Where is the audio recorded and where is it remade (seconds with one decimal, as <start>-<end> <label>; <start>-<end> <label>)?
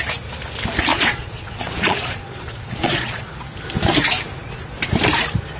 0.0-0.9 recorded; 0.9-3.3 remade; 3.3-5.6 recorded